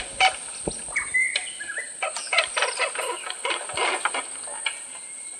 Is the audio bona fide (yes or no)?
yes